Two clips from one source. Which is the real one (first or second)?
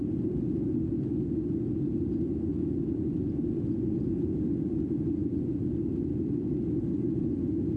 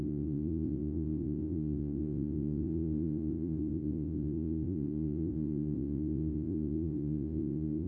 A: first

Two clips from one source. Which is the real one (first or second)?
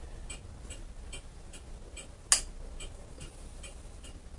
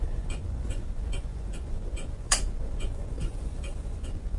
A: first